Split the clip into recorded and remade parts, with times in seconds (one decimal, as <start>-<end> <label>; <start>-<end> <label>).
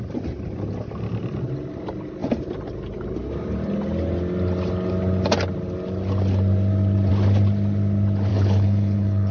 0.0-8.3 recorded; 8.3-9.3 remade